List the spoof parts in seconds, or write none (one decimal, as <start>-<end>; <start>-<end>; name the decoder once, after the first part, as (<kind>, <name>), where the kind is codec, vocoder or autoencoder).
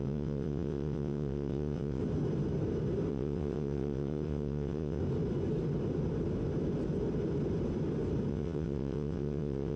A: 0.0-2.0 (vocoder, WaveNeXt); 3.1-5.0; 8.3-9.8